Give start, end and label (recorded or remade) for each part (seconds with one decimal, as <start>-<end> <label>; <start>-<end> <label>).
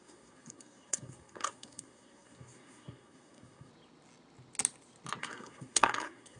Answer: 0.0-3.7 remade; 3.7-5.2 recorded; 5.2-6.4 remade